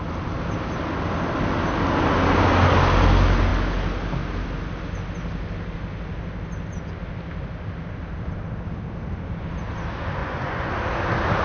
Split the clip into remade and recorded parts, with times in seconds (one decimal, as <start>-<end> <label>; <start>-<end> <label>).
0.0-10.2 recorded; 10.2-10.7 remade; 10.7-11.4 recorded